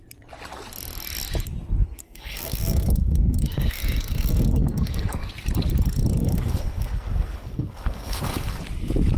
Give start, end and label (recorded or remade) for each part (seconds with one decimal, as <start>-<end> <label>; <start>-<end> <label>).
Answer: 0.0-2.0 recorded; 2.0-5.3 remade; 5.3-6.2 recorded; 6.2-8.6 remade; 8.6-9.2 recorded